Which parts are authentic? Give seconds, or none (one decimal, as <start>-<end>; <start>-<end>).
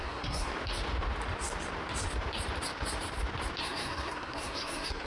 0.5-3.6